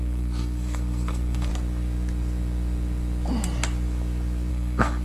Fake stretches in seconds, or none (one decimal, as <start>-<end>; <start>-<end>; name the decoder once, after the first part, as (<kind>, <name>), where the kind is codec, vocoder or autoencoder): 0.0-1.5 (codec, SNAC); 4.5-5.0